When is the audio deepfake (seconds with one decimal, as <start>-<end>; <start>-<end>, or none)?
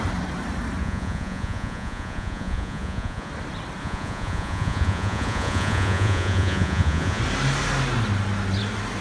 0.8-3.3; 3.8-7.2